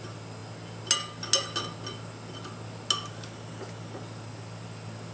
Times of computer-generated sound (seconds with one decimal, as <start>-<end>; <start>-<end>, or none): none